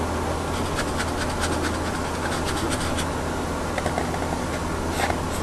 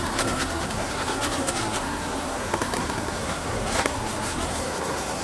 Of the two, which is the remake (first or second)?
second